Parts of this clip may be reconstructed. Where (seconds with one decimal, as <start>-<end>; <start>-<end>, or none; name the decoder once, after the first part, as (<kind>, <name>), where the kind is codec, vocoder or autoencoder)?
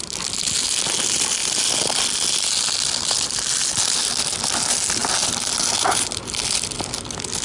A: none